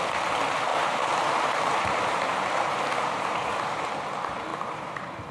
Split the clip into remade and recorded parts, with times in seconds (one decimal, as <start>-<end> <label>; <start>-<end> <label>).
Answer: 0.0-0.7 recorded; 0.7-3.9 remade; 3.9-4.5 recorded; 4.5-5.3 remade